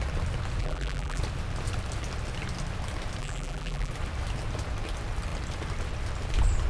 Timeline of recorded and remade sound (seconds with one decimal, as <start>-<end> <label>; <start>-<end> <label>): 0.0-0.6 recorded; 0.6-1.2 remade; 1.2-3.2 recorded; 3.2-3.9 remade; 3.9-6.7 recorded